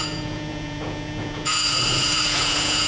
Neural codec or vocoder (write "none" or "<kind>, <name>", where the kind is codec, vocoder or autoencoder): vocoder, Vocos